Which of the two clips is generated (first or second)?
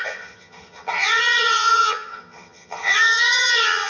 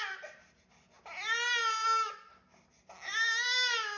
first